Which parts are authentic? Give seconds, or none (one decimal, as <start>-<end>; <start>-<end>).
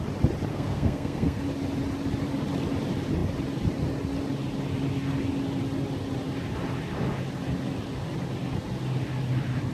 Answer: 0.0-0.5; 1.4-9.7